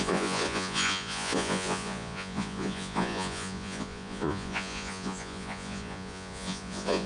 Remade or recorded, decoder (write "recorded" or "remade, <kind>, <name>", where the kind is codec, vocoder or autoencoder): remade, vocoder, Vocos